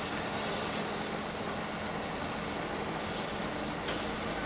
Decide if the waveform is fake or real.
real